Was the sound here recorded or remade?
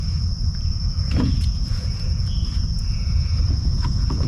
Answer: remade